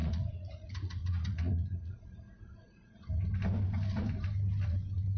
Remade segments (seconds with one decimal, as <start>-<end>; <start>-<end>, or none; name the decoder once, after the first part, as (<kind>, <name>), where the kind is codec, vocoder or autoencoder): 0.0-3.1 (vocoder, Vocos)